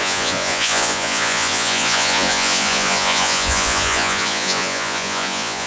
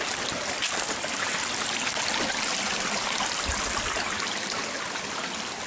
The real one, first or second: second